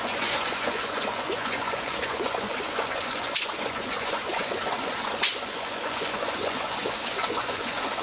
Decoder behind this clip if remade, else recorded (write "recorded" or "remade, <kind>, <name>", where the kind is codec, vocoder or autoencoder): remade, vocoder, Vocos